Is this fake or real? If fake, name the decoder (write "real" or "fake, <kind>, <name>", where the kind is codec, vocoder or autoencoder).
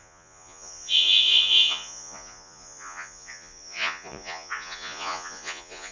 fake, vocoder, Vocos